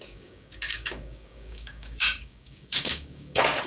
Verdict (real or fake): fake